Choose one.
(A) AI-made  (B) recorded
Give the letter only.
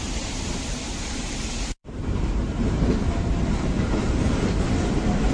A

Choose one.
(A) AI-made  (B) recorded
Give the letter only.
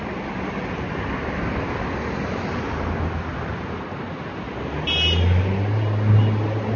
B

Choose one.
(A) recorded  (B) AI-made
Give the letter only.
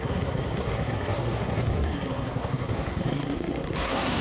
B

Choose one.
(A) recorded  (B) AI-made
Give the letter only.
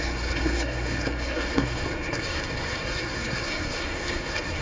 B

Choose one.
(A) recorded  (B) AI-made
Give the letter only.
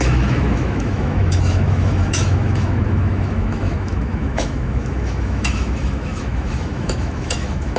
B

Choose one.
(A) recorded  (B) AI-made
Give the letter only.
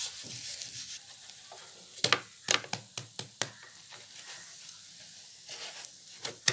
A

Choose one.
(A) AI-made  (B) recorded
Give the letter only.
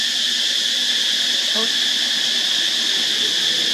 B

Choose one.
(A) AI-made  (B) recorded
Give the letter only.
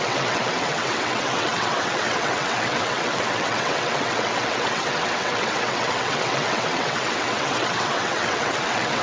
A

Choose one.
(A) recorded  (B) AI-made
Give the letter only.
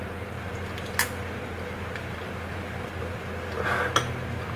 A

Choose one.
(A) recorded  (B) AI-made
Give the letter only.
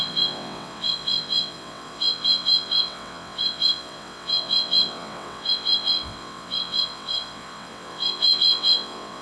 B